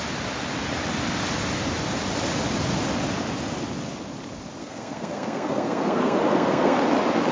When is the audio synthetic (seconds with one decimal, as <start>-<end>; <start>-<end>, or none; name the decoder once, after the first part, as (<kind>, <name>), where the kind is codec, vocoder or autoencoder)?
4.6-6.8 (codec, SNAC)